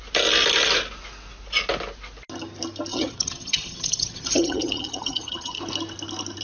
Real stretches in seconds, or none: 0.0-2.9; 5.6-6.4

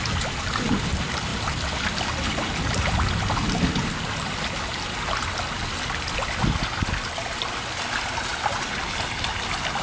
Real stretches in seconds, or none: 0.0-9.8